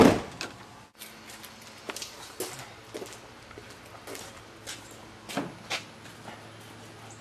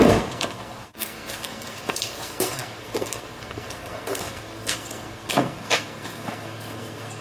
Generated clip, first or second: second